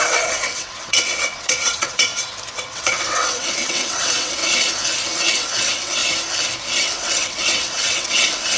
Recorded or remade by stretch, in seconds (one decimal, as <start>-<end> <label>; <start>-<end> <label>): 0.0-2.1 remade; 2.1-2.6 recorded; 2.6-4.4 remade; 4.4-5.3 recorded; 5.3-6.0 remade; 6.0-6.8 recorded; 6.8-8.6 remade